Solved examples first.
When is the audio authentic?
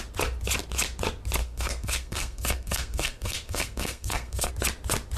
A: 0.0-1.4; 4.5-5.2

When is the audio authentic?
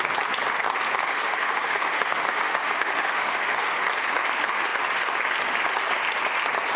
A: 0.0-1.0; 3.8-6.8